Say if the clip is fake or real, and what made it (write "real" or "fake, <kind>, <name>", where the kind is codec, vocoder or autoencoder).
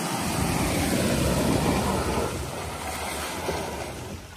real